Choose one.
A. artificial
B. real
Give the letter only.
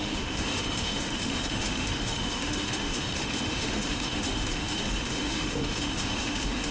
A